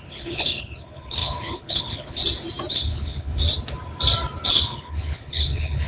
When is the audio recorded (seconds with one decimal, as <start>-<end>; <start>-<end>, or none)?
2.2-2.7; 3.4-4.5